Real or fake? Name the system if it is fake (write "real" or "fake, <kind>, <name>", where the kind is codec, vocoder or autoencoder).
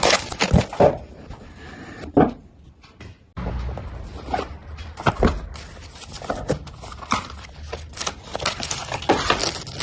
real